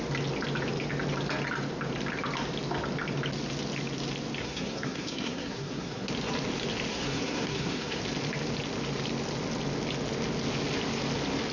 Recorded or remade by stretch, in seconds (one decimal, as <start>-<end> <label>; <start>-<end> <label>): 0.0-4.4 recorded; 4.4-6.1 remade; 6.1-6.9 recorded; 6.9-8.0 remade; 8.0-11.5 recorded